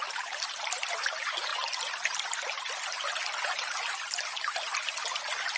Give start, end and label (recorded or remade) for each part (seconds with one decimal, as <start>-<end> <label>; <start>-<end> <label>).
0.0-5.6 recorded